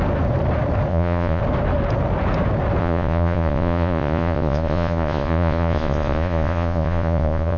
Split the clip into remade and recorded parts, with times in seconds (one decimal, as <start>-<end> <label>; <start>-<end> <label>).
0.0-0.9 recorded; 0.9-1.4 remade; 1.4-2.8 recorded; 2.8-7.6 remade